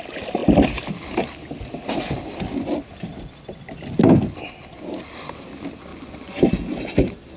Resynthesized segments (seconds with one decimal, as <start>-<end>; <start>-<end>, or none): 5.9-6.5